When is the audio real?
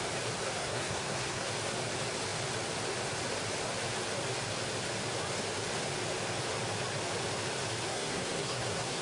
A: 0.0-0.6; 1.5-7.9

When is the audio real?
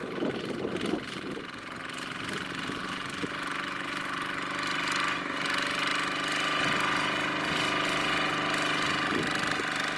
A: 0.0-10.0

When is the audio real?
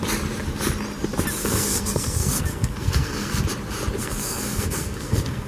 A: 0.0-1.4; 3.4-4.0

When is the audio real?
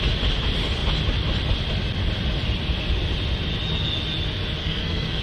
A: 0.0-4.6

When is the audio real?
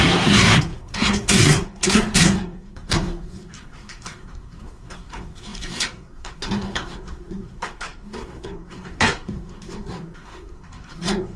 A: none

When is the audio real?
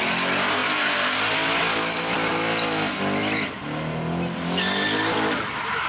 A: 0.0-5.9